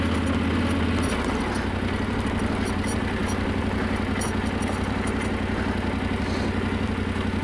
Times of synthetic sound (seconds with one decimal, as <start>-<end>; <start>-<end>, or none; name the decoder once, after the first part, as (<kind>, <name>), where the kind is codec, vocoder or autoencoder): none